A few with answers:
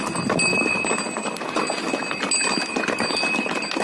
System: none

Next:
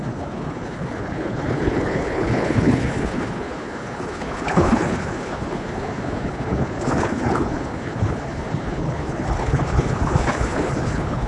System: codec, HILCodec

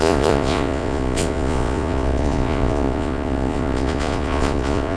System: vocoder, Vocos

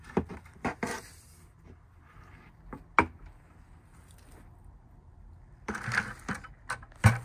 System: none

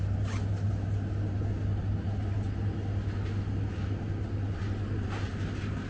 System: none